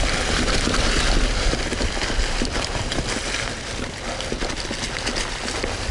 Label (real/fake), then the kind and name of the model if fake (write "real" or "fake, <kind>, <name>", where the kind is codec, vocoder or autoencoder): real